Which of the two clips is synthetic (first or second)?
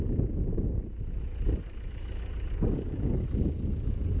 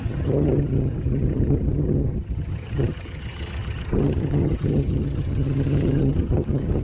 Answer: second